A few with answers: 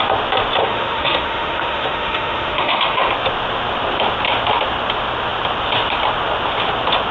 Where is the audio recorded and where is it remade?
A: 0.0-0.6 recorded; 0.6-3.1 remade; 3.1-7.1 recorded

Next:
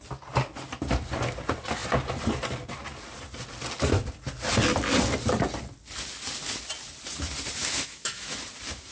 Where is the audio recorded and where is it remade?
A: 0.0-7.6 recorded; 7.6-8.3 remade; 8.3-8.9 recorded

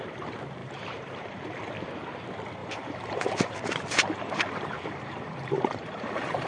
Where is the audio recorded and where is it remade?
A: 0.0-0.6 recorded; 0.6-1.7 remade; 1.7-2.6 recorded; 2.6-6.5 remade

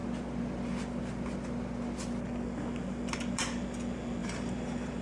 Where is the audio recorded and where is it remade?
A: 0.0-4.2 recorded; 4.2-5.0 remade

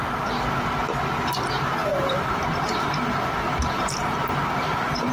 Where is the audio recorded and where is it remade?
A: 0.0-1.9 recorded; 1.9-5.1 remade

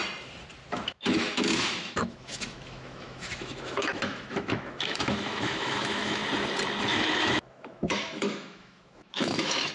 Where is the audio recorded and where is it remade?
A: 0.0-0.7 recorded; 0.7-6.2 remade; 6.2-6.9 recorded; 6.9-9.7 remade

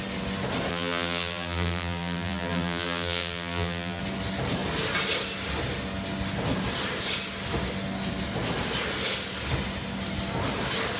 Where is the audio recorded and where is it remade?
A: 0.0-0.7 recorded; 0.7-4.0 remade; 4.0-11.0 recorded

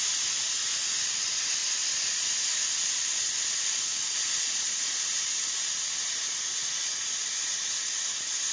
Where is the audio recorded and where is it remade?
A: 0.0-1.6 remade; 1.6-3.0 recorded; 3.0-8.5 remade